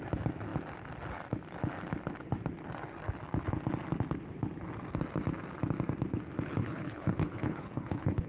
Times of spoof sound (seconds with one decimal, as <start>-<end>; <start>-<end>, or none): 6.6-8.3